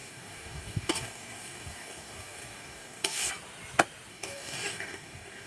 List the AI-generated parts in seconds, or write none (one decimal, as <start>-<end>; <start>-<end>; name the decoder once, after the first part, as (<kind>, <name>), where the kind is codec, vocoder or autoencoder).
0.0-3.3 (codec, DAC); 4.1-5.5